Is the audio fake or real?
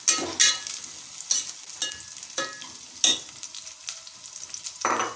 real